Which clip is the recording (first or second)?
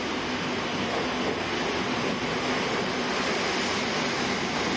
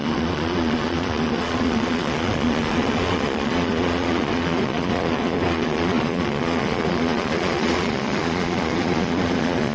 first